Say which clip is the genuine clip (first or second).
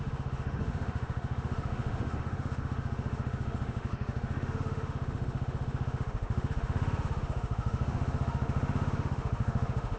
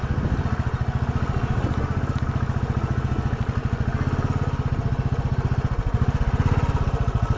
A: second